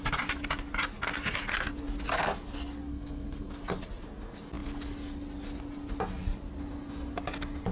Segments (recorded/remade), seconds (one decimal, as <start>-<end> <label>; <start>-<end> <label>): 0.0-2.9 recorded; 2.9-3.5 remade; 3.5-7.7 recorded